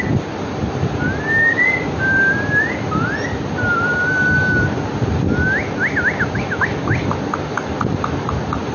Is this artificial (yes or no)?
no